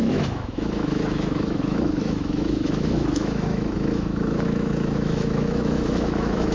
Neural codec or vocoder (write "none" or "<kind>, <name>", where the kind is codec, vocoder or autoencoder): autoencoder, DAC-VAE